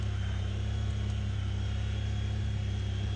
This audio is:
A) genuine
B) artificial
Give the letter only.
A